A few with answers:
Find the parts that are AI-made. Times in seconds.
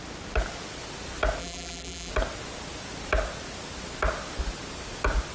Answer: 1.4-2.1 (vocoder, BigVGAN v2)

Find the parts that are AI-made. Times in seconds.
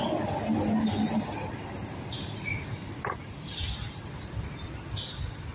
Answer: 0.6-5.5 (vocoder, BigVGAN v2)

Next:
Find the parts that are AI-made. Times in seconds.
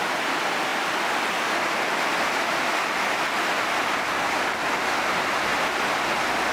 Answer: none